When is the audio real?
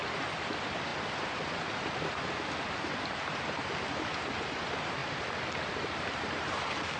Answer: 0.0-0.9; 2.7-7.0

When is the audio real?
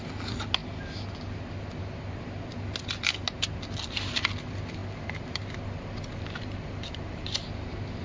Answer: 0.0-4.8; 7.5-8.0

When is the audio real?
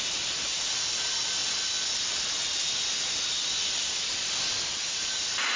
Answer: 0.0-5.6